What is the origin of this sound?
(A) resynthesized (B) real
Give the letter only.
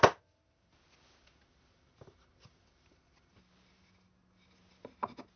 B